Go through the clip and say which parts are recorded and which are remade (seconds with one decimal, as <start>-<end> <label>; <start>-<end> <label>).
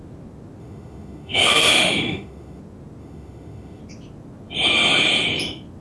0.0-0.6 recorded; 0.6-2.6 remade; 2.6-3.0 recorded; 3.0-3.8 remade; 3.8-5.8 recorded